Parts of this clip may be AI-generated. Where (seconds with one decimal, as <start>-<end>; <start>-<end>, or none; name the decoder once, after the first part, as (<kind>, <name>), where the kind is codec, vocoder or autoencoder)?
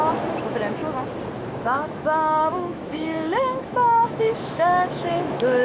0.0-0.8 (autoencoder, DAC-VAE); 1.6-5.6